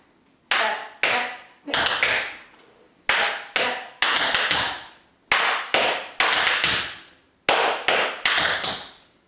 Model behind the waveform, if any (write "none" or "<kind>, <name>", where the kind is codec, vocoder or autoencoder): none